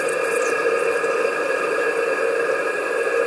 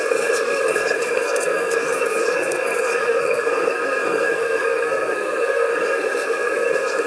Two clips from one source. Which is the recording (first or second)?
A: first